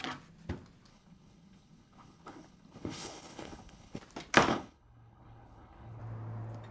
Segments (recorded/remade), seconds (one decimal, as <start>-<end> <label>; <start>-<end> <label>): 0.0-0.9 recorded; 0.9-4.0 remade; 4.0-4.5 recorded; 4.5-6.0 remade; 6.0-6.7 recorded